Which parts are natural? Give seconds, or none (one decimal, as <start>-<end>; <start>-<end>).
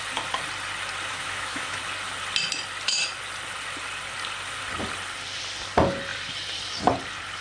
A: 0.0-1.1; 1.8-7.4